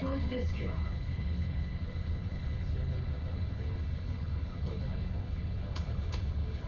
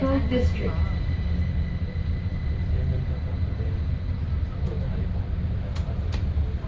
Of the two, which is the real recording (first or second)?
second